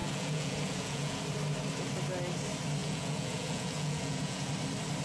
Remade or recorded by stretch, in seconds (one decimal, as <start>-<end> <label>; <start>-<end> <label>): 0.0-1.2 remade; 1.2-2.8 recorded; 2.8-4.5 remade; 4.5-5.0 recorded